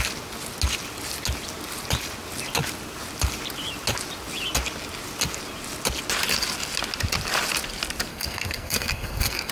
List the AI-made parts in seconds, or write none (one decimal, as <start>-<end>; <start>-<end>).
8.1-9.5

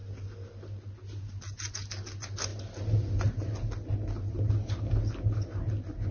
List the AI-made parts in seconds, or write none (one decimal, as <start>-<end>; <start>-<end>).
none

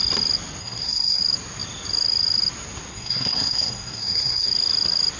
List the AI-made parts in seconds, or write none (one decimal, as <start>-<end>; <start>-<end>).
0.6-1.2; 2.9-4.5